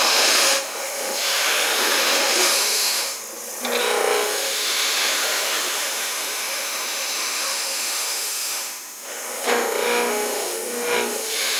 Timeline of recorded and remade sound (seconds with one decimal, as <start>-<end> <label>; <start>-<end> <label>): 0.0-3.2 remade; 3.2-3.8 recorded; 3.8-11.6 remade